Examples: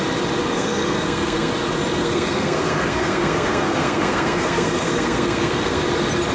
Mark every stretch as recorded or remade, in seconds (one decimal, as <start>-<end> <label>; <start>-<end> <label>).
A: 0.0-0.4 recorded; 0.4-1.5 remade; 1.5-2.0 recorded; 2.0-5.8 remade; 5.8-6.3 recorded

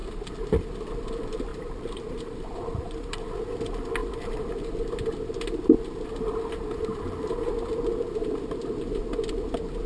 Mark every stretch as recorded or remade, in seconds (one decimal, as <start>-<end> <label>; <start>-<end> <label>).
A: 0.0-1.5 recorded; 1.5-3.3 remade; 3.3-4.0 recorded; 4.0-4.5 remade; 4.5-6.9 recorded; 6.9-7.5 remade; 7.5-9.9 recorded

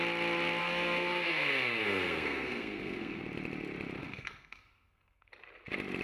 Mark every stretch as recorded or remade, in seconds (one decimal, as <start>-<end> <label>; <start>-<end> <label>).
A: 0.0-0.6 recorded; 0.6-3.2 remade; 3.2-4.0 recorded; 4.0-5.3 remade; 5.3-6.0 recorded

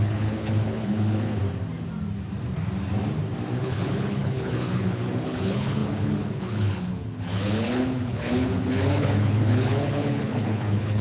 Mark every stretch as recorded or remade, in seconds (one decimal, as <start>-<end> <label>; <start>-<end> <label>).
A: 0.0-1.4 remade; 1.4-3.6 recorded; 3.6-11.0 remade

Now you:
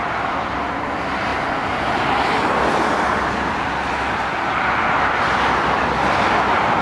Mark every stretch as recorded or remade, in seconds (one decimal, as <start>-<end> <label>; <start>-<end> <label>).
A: 0.0-6.8 recorded

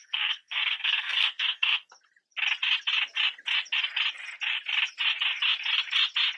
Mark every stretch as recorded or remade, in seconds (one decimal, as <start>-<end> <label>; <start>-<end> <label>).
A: 0.0-1.9 remade; 1.9-6.4 recorded

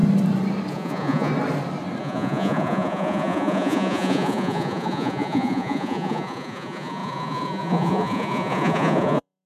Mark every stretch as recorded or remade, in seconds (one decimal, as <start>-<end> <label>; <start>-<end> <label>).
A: 0.0-0.7 recorded; 0.7-1.3 remade; 1.3-2.0 recorded; 2.0-9.5 remade